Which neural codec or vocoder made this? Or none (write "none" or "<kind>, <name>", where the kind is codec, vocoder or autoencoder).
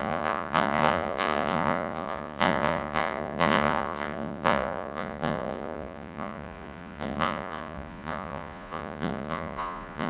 vocoder, Vocos